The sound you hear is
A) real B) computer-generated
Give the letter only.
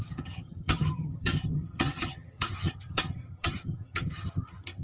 B